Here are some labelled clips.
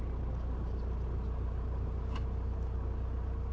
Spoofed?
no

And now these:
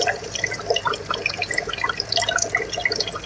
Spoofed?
no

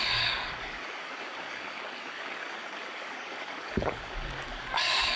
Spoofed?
yes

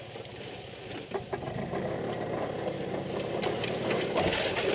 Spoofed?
no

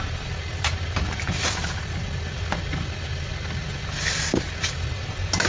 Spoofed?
no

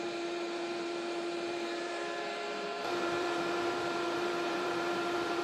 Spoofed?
yes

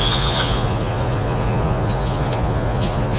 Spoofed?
yes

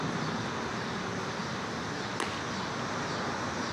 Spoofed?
no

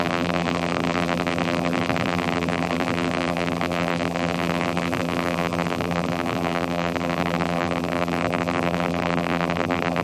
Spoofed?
yes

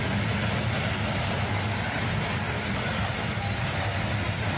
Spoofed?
no